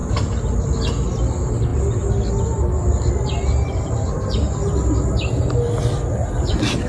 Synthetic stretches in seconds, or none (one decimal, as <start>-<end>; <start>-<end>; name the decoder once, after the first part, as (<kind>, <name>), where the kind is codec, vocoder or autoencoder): none